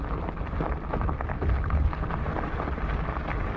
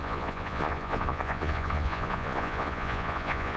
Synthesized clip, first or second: second